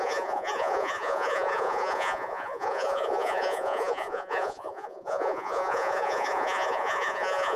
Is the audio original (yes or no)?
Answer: no